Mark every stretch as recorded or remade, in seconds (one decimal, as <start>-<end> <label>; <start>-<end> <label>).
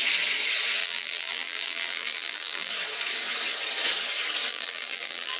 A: 0.0-0.8 recorded; 0.8-2.7 remade; 2.7-4.5 recorded; 4.5-5.4 remade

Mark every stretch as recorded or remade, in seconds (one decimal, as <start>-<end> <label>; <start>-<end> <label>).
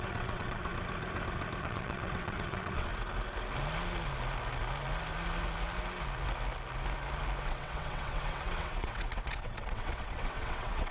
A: 0.0-0.7 remade; 0.7-1.6 recorded; 1.6-2.9 remade; 2.9-7.4 recorded; 7.4-10.9 remade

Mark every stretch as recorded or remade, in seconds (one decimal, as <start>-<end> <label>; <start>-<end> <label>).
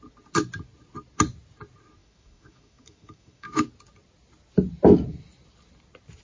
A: 0.0-2.0 recorded; 2.0-3.7 remade; 3.7-6.2 recorded